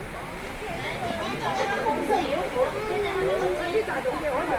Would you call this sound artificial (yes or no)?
no